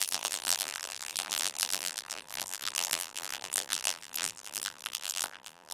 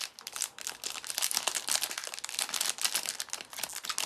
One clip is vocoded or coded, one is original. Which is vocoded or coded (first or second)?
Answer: first